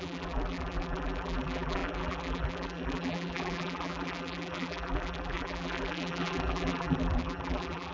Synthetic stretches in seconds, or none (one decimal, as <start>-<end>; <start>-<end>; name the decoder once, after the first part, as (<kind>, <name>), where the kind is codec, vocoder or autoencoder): 0.0-7.9 (vocoder, BigVGAN v2)